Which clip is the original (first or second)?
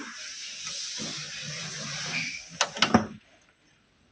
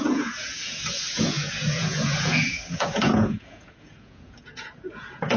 first